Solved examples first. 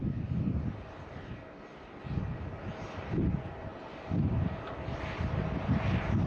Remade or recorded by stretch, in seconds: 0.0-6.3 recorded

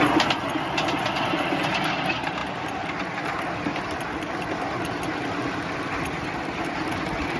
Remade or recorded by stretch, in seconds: 0.0-7.4 recorded

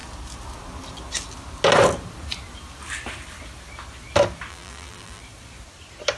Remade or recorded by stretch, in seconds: 0.0-4.5 recorded; 4.5-5.2 remade; 5.2-6.2 recorded